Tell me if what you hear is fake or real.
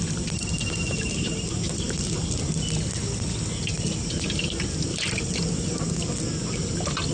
real